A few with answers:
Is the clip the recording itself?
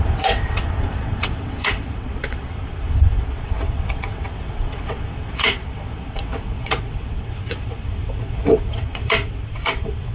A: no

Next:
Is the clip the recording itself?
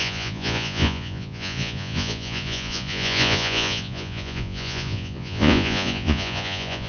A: no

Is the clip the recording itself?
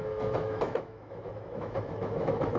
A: no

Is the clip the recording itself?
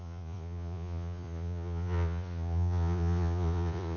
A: no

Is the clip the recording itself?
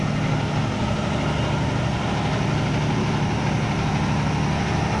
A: yes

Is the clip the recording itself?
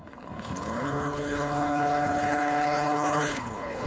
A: no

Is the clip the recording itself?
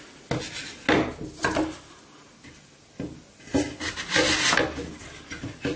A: yes